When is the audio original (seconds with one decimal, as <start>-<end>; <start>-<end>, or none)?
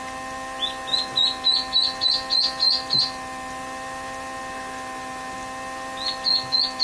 0.0-2.4; 3.0-6.8